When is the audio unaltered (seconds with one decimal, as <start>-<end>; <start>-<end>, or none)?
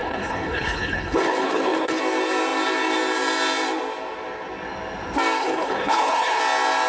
2.0-5.4; 6.4-6.9